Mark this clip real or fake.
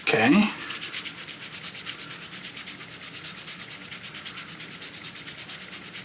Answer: real